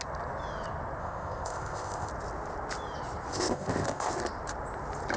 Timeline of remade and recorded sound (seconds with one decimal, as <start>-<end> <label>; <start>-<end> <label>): 0.0-1.0 recorded; 1.0-2.1 remade; 2.1-3.3 recorded; 3.3-4.1 remade; 4.1-5.2 recorded